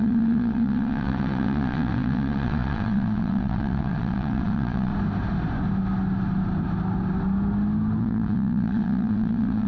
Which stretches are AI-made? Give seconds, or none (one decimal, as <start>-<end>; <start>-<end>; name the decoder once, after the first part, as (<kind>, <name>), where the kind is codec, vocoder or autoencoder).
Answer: 0.0-4.9 (vocoder, WaveNeXt); 8.0-9.7